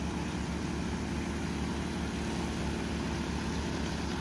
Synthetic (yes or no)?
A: no